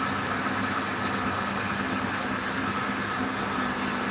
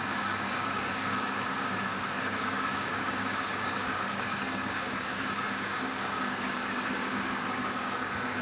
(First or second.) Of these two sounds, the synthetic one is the second